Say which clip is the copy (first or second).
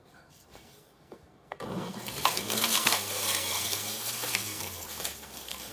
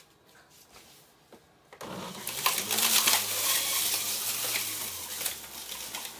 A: first